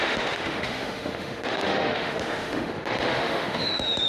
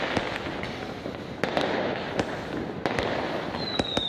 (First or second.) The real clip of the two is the second